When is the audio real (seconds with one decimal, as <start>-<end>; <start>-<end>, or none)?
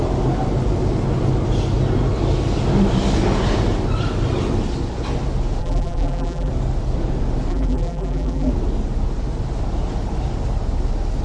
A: 0.0-5.6; 6.5-7.5; 8.5-11.2